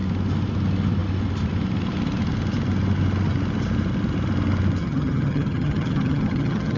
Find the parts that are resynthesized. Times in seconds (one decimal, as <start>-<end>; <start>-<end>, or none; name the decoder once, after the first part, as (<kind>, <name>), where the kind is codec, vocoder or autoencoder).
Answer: 4.8-6.8 (vocoder, HiFi-GAN)